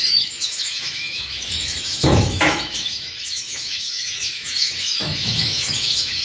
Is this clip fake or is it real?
fake